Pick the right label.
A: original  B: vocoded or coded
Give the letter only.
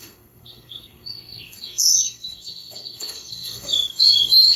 B